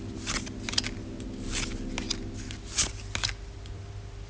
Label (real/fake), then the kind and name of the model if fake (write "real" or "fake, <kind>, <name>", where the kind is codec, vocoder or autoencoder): real